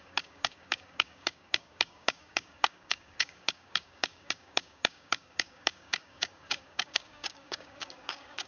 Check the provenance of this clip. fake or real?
fake